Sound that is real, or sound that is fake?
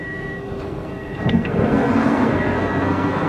fake